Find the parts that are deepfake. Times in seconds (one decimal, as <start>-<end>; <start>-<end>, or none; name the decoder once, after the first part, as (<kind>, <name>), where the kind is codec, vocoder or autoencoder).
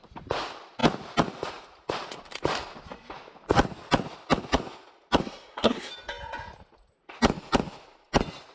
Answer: 5.2-5.9 (codec, SNAC)